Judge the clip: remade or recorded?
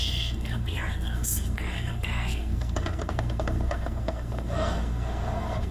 remade